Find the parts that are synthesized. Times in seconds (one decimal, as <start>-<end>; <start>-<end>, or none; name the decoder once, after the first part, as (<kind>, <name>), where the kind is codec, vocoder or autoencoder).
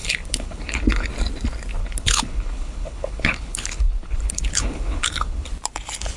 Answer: 0.0-1.1 (codec, HILCodec); 1.8-5.5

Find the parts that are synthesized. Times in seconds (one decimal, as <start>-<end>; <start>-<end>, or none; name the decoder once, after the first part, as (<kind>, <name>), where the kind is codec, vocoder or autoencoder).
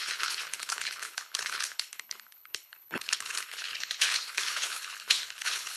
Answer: 0.0-5.8 (codec, HILCodec)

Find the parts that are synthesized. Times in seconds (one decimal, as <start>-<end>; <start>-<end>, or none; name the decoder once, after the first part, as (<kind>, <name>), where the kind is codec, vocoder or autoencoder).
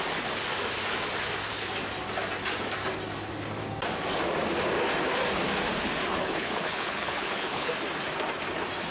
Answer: 6.1-7.7 (codec, HILCodec)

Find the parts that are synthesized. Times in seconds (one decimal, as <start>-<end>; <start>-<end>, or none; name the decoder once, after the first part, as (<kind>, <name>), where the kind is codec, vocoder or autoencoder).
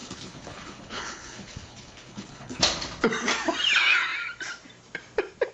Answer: 0.0-2.6 (codec, HILCodec)